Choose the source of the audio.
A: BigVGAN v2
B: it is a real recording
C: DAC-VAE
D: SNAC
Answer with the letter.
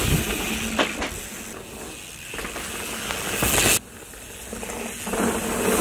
B